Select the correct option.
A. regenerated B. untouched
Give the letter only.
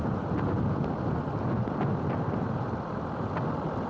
B